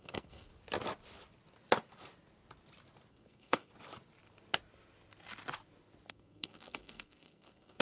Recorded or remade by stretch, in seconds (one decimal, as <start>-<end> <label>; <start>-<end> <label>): 0.0-0.5 remade; 0.5-3.1 recorded; 3.1-3.7 remade; 3.7-6.1 recorded; 6.1-7.8 remade